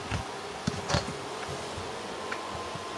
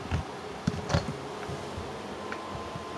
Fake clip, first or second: first